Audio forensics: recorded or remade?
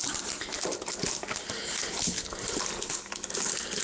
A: recorded